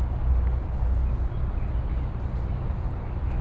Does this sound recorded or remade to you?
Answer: recorded